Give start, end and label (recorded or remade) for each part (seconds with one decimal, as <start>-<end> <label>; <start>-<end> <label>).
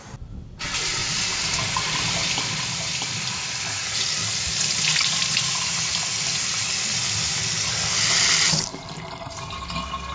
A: 0.0-1.0 recorded; 1.0-5.8 remade; 5.8-8.7 recorded; 8.7-9.3 remade; 9.3-10.1 recorded